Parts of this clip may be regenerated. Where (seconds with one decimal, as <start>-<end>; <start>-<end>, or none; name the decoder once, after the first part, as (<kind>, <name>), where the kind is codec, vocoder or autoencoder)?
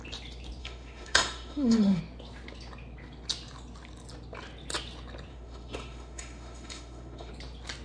0.6-2.0 (autoencoder, DAC-VAE); 5.3-7.3